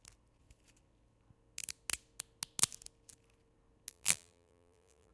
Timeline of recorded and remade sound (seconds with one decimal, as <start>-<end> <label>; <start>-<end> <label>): 0.0-3.9 recorded; 3.9-5.1 remade

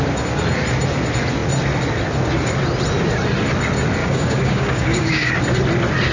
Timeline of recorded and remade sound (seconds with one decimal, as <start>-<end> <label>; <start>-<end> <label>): 0.0-4.0 recorded; 4.0-5.3 remade; 5.3-6.1 recorded

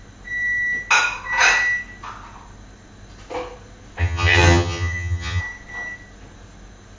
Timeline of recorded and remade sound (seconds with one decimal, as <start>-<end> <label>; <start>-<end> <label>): 0.0-4.0 recorded; 4.0-5.4 remade; 5.4-7.0 recorded

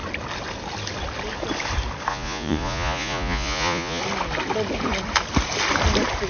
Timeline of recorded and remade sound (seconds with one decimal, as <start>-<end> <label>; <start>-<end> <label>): 0.0-2.1 recorded; 2.1-4.0 remade; 4.0-6.3 recorded

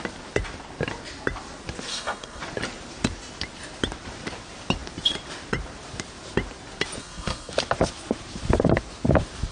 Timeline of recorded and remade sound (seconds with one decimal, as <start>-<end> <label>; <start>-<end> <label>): 0.0-1.9 recorded; 1.9-2.4 remade; 2.4-7.0 recorded; 7.0-7.5 remade; 7.5-9.5 recorded

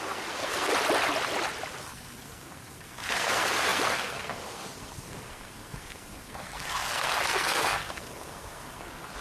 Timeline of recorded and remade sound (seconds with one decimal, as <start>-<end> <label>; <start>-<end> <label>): 0.0-0.7 remade; 0.7-1.8 recorded; 1.8-9.2 remade

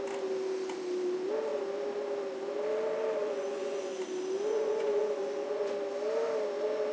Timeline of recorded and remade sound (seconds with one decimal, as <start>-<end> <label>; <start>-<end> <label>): 0.0-3.2 recorded; 3.2-3.9 remade; 3.9-4.5 recorded; 4.5-5.7 remade; 5.7-6.9 recorded

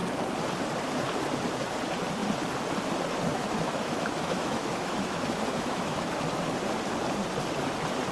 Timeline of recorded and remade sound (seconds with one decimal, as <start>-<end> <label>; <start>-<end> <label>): 0.0-3.3 recorded; 3.3-6.1 remade; 6.1-8.1 recorded